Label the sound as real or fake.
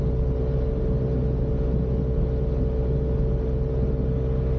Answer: real